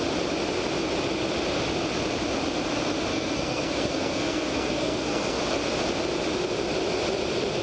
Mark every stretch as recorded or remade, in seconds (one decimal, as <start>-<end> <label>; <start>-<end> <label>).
0.0-3.1 recorded; 3.1-5.4 remade; 5.4-7.6 recorded

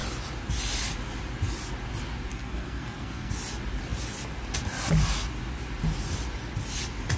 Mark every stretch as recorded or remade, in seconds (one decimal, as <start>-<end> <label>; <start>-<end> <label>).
0.0-2.3 recorded; 2.3-3.3 remade; 3.3-7.2 recorded

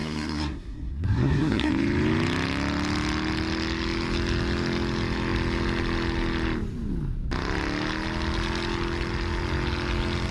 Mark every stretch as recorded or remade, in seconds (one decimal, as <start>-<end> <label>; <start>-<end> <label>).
0.0-1.7 remade; 1.7-10.3 recorded

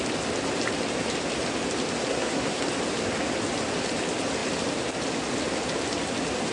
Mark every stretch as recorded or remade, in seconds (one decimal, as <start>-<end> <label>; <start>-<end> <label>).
0.0-2.1 recorded; 2.1-2.6 remade; 2.6-6.5 recorded